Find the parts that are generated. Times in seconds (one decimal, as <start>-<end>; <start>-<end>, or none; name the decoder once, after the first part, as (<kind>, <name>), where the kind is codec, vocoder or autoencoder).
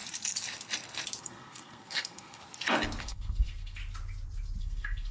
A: 1.2-2.4 (codec, SNAC); 3.0-3.8; 4.6-5.1